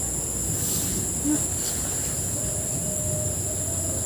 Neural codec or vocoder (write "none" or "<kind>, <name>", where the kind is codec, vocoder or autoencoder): none